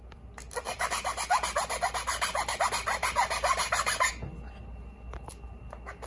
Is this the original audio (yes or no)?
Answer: yes